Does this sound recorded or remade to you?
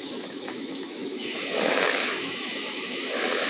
remade